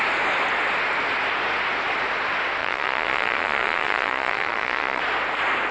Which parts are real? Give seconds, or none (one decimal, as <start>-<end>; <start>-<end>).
0.0-2.6; 5.0-5.7